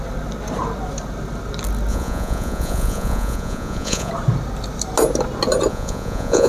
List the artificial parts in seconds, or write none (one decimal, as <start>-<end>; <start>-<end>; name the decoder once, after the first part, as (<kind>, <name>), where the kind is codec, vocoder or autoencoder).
1.9-4.1 (vocoder, Vocos); 5.7-6.5